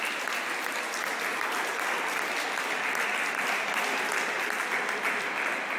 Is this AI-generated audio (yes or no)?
no